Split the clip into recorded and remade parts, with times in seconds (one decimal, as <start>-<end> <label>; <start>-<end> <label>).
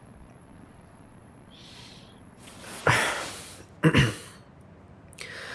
0.0-2.8 remade; 2.8-5.5 recorded